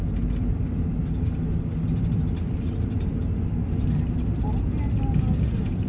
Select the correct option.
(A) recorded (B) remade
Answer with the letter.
A